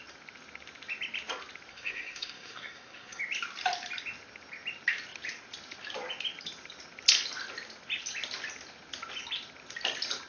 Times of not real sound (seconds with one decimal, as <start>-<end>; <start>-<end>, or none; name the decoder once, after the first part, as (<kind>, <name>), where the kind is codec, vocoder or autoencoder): 1.7-3.2 (codec, SNAC)